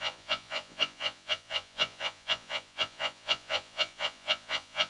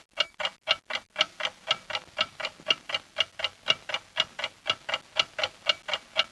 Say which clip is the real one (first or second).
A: second